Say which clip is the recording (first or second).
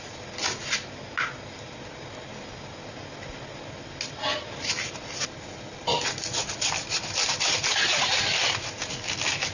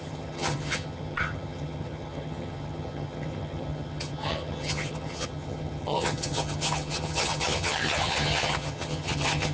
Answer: first